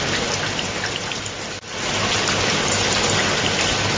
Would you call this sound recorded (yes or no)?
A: yes